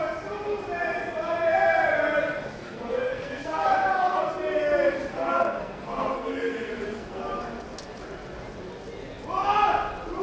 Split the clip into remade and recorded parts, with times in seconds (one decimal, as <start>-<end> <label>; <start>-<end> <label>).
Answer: 0.0-2.6 recorded; 2.6-4.3 remade; 4.3-5.1 recorded; 5.1-7.2 remade; 7.2-10.2 recorded